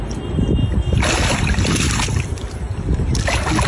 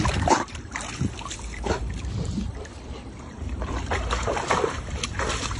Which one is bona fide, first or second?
first